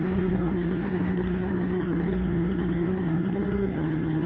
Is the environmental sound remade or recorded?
remade